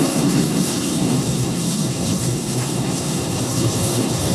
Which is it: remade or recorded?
remade